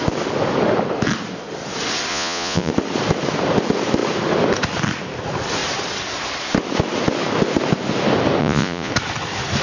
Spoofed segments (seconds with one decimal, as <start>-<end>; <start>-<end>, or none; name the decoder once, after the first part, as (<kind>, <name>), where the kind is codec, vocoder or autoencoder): 2.1-2.7 (vocoder, Vocos); 8.4-8.9